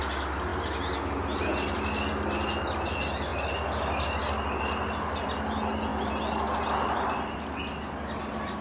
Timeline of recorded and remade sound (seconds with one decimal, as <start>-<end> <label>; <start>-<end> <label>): 0.0-8.6 recorded